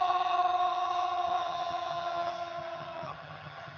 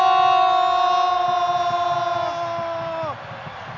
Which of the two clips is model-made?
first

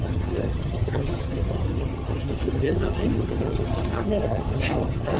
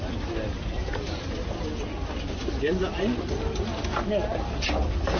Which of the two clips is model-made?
first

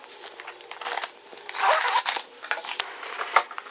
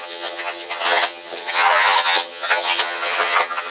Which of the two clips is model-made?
second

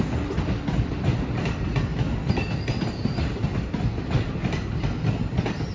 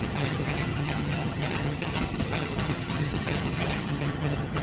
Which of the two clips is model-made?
second